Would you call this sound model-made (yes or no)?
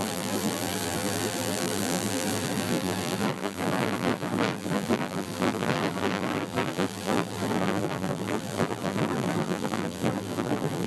yes